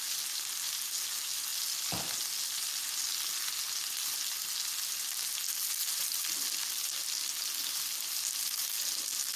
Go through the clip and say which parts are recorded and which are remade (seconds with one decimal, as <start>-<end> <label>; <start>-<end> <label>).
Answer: 0.0-9.4 recorded